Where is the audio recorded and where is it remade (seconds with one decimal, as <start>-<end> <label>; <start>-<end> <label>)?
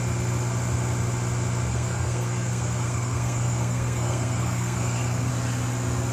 0.0-1.7 recorded; 1.7-5.3 remade; 5.3-6.1 recorded